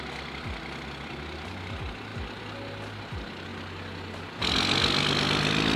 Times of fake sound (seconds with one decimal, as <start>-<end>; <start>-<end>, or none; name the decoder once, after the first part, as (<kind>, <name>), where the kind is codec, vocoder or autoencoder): none